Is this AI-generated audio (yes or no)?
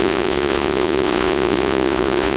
yes